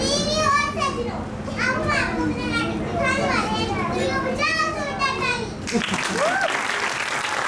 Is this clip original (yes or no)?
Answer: yes